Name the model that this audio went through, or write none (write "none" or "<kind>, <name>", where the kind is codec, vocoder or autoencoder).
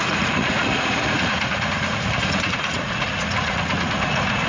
vocoder, Vocos